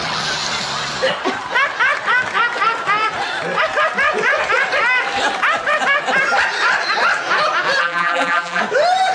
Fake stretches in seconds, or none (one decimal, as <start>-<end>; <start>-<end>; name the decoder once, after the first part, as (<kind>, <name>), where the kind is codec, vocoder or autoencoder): 7.8-8.6 (vocoder, BigVGAN v2)